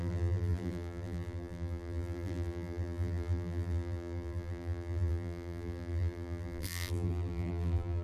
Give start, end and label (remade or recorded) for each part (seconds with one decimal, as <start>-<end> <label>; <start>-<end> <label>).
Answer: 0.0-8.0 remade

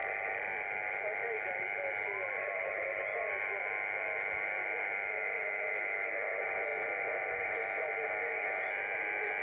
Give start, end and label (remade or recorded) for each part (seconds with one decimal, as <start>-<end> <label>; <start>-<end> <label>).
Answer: 0.0-9.4 recorded

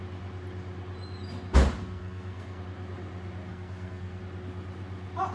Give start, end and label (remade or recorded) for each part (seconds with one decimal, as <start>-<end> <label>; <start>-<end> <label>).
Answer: 0.0-1.8 recorded; 1.8-2.6 remade; 2.6-3.5 recorded; 3.5-4.2 remade; 4.2-5.3 recorded